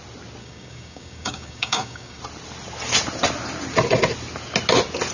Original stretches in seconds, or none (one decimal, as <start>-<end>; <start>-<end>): 0.0-0.4; 2.2-5.1